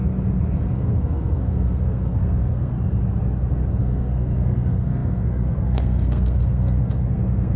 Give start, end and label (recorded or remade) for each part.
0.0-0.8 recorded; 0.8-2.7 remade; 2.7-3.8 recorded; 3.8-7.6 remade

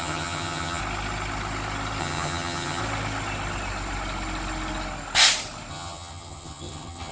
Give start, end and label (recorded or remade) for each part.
0.0-0.8 remade; 0.8-2.0 recorded; 2.0-2.8 remade; 2.8-5.7 recorded; 5.7-7.1 remade

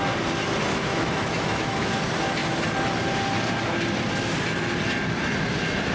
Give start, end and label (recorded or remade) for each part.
0.0-0.7 recorded; 0.7-1.9 remade; 1.9-5.9 recorded

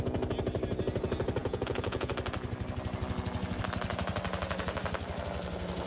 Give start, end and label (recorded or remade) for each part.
0.0-1.4 recorded; 1.4-2.1 remade; 2.1-5.9 recorded

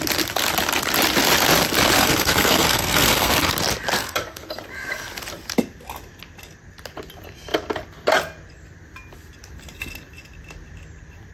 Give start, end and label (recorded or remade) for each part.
0.0-2.0 recorded; 2.0-3.5 remade; 3.5-4.0 recorded; 4.0-4.6 remade; 4.6-11.3 recorded